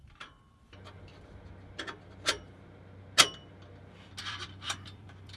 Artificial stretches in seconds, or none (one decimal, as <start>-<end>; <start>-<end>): 0.0-1.1; 4.2-5.4